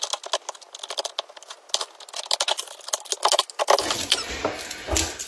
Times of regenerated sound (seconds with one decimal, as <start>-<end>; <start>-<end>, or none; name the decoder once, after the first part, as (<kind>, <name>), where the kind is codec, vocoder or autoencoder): none